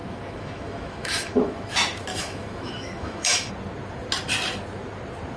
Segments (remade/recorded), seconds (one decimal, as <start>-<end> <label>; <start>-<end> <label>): 0.0-1.7 remade; 1.7-2.1 recorded; 2.1-3.5 remade; 3.5-5.4 recorded